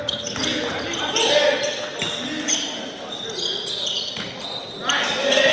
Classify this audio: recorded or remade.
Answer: recorded